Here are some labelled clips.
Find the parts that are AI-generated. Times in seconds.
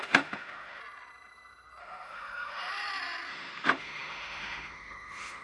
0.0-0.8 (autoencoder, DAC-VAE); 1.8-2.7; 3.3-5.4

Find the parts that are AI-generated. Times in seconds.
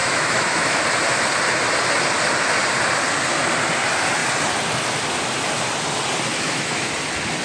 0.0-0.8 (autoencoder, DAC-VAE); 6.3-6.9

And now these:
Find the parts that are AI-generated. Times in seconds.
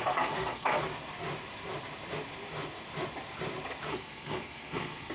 0.0-0.8 (codec, SNAC); 3.9-5.1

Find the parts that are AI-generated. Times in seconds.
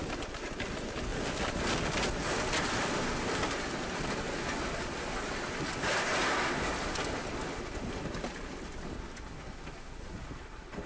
none